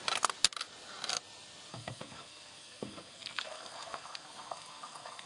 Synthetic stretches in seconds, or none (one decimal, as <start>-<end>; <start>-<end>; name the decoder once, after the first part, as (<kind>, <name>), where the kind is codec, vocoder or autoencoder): 1.7-5.3 (codec, SNAC)

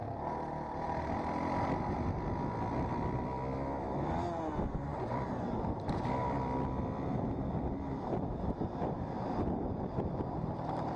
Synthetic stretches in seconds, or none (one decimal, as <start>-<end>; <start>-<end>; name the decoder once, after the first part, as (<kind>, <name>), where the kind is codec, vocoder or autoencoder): 4.9-5.5 (vocoder, BigVGAN v2); 6.2-9.4

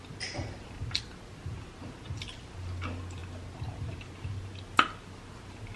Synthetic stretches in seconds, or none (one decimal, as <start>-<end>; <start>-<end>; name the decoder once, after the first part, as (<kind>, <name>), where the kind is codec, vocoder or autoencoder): none

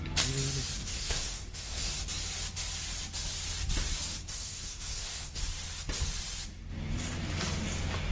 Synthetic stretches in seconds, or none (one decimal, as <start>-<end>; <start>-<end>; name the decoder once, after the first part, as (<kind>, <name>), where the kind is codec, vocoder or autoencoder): 0.8-2.0 (codec, SNAC); 4.2-5.4

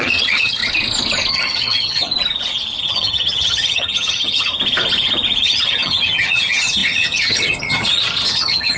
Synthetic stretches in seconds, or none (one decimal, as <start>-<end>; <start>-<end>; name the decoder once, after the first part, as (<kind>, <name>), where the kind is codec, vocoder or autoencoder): 0.0-0.6 (vocoder, HiFi-GAN); 1.3-2.1; 2.8-4.5; 5.4-8.8